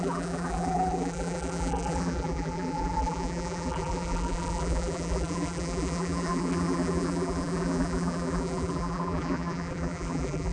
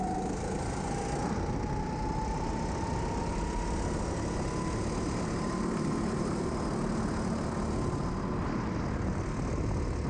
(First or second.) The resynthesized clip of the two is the first